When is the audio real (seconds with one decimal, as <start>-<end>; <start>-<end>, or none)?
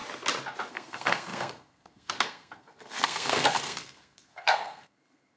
0.0-0.7